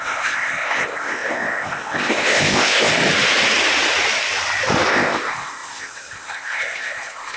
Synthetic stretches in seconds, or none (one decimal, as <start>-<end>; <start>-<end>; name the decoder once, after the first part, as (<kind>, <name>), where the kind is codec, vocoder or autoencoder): 0.0-2.9 (codec, ZipCodec); 4.9-7.4